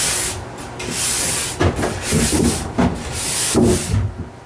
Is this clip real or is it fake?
real